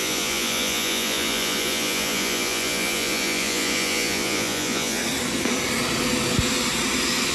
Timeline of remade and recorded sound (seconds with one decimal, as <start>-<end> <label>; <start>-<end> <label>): 0.0-5.0 remade; 5.0-7.3 recorded